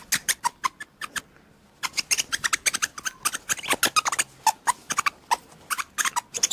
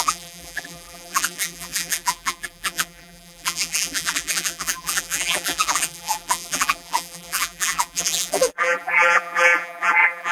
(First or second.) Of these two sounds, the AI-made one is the second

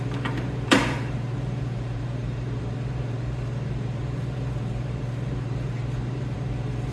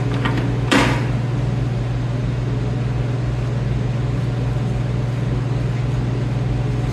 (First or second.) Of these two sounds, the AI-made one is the first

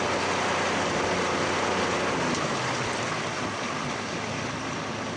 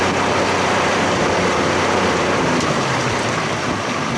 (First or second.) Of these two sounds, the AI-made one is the second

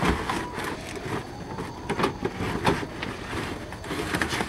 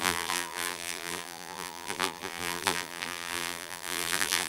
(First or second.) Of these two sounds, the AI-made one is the second